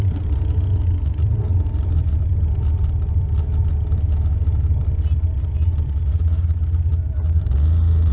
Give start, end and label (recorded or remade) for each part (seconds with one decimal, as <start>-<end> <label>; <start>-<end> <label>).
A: 0.0-8.1 recorded